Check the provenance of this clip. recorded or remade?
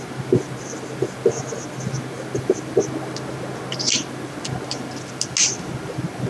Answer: recorded